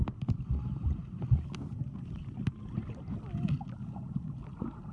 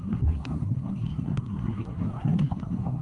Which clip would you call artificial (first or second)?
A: second